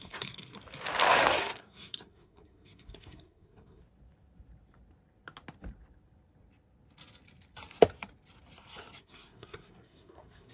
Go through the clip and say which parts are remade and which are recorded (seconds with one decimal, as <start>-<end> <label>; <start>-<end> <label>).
0.0-0.6 remade; 0.6-1.4 recorded; 1.4-3.8 remade; 3.8-9.0 recorded; 9.0-10.5 remade